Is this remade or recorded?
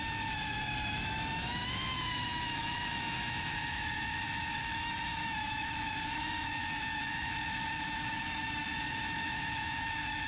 remade